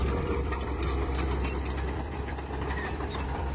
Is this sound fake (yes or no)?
yes